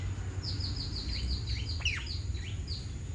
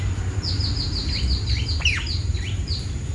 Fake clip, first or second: second